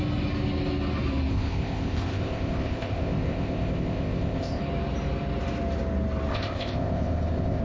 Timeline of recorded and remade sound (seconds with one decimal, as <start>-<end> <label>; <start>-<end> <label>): 0.0-1.3 recorded; 1.3-4.6 remade; 4.6-6.3 recorded; 6.3-7.6 remade